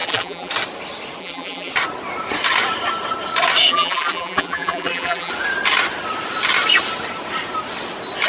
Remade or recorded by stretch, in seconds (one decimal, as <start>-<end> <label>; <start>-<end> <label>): 0.0-0.5 remade; 0.5-1.2 recorded; 1.2-1.7 remade; 1.7-3.7 recorded; 3.7-5.3 remade; 5.3-8.3 recorded